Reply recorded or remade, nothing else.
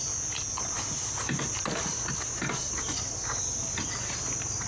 recorded